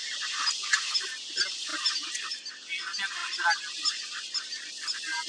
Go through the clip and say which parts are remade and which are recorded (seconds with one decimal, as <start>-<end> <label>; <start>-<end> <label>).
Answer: 0.0-0.9 remade; 0.9-5.3 recorded